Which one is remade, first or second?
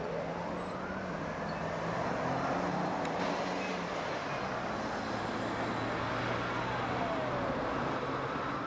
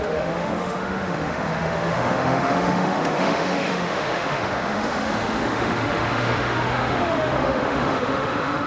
second